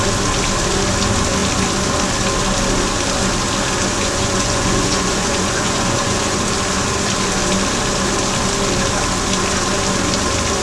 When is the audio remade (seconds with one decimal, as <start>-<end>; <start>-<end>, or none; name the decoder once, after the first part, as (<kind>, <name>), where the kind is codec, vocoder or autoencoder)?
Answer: 3.9-6.4 (vocoder, Vocos)